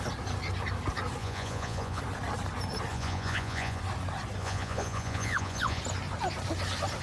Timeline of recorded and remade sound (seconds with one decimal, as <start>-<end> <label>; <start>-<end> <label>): 0.0-1.2 recorded; 1.2-2.0 remade; 2.0-2.9 recorded; 2.9-3.8 remade; 3.8-4.4 recorded; 4.4-5.8 remade; 5.8-7.0 recorded

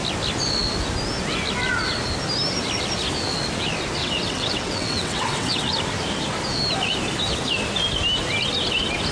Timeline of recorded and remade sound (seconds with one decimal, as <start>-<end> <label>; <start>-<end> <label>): 0.0-4.0 recorded; 4.0-5.6 remade; 5.6-9.1 recorded

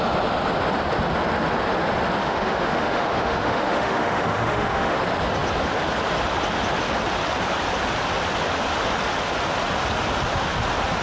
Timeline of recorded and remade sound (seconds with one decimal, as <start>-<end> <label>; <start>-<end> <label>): 0.0-2.2 recorded; 2.2-5.0 remade; 5.0-11.0 recorded

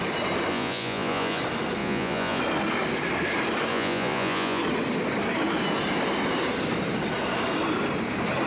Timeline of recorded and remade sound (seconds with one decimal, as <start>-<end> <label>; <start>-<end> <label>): 0.0-0.5 recorded; 0.5-1.4 remade; 1.4-1.8 recorded; 1.8-2.4 remade; 2.4-3.7 recorded; 3.7-4.6 remade; 4.6-8.5 recorded